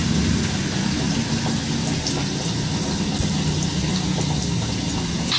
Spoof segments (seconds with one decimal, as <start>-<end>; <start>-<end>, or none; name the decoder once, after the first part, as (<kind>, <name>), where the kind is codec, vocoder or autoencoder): none